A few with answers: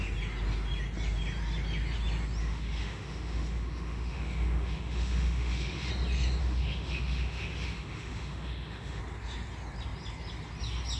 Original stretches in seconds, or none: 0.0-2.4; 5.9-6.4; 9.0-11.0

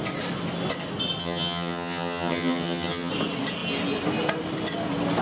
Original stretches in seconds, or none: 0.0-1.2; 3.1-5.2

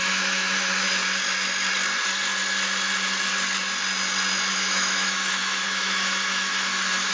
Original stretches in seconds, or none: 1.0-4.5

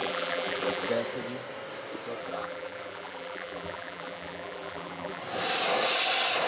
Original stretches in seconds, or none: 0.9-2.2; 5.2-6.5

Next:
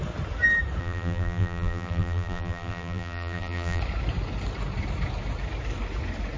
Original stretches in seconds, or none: 0.0-0.8; 3.8-6.4

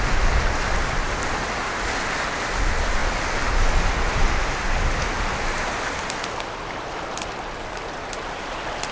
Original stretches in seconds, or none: 0.0-8.9

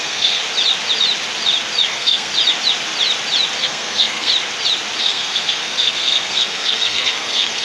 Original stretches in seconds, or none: 0.4-1.9; 2.3-3.6; 4.3-5.0

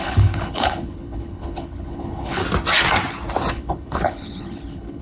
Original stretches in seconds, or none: 2.4-3.5